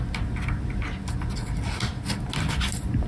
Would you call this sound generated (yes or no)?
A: no